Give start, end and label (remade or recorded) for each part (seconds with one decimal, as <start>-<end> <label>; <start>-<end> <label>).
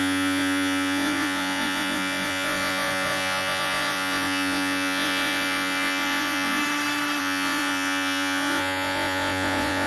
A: 0.0-6.6 remade; 6.6-7.2 recorded; 7.2-9.9 remade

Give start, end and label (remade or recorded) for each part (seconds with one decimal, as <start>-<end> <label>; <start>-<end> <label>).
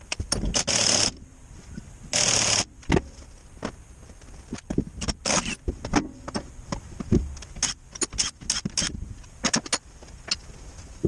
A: 0.0-11.1 recorded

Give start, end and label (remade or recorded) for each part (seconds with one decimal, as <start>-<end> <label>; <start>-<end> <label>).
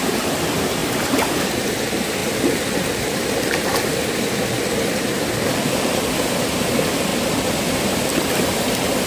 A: 0.0-0.8 remade; 0.8-1.4 recorded; 1.4-7.1 remade; 7.1-7.6 recorded; 7.6-9.1 remade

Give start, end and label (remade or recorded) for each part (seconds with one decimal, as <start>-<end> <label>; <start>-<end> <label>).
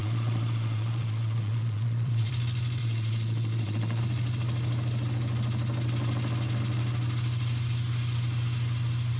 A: 0.0-2.3 remade; 2.3-2.8 recorded; 2.8-4.0 remade; 4.0-9.2 recorded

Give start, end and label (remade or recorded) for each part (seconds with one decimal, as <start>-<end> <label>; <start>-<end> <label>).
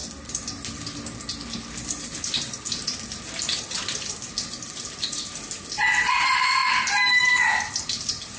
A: 0.0-8.4 recorded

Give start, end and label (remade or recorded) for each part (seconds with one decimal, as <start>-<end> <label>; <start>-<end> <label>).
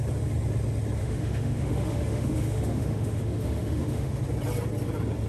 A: 0.0-1.0 recorded; 1.0-4.2 remade; 4.2-5.3 recorded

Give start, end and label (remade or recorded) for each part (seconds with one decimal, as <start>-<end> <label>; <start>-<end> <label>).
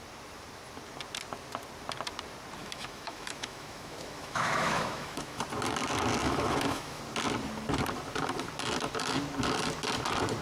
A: 0.0-2.6 recorded; 2.6-5.4 remade; 5.4-6.2 recorded; 6.2-7.0 remade; 7.0-10.4 recorded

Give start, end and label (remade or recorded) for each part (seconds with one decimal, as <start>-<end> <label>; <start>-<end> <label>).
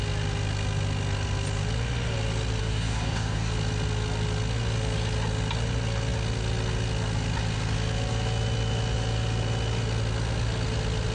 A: 0.0-2.6 recorded; 2.6-3.5 remade; 3.5-11.1 recorded